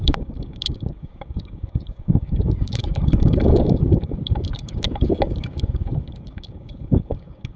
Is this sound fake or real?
fake